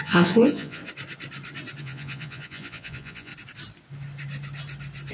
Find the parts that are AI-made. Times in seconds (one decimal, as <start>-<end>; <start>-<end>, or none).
0.0-0.8; 1.8-3.3